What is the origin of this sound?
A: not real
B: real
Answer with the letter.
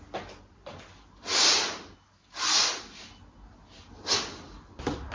B